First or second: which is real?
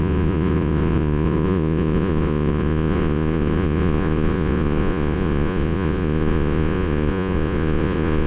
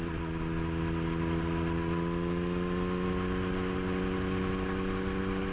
second